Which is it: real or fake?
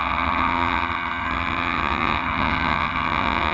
fake